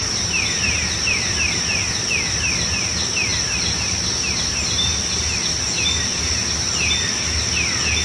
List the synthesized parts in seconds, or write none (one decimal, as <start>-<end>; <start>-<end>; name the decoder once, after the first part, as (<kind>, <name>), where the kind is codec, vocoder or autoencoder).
none